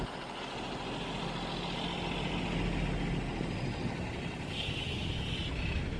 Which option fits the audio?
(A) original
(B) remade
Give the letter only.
A